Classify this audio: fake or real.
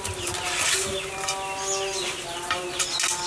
real